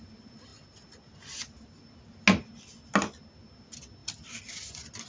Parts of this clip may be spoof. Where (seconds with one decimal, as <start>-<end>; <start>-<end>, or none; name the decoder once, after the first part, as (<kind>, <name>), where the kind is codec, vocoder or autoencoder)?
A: none